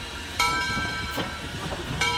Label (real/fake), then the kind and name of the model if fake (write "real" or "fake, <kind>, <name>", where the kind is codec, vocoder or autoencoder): fake, vocoder, BigVGAN v2